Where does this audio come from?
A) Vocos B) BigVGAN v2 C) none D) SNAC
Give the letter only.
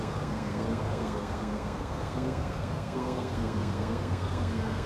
D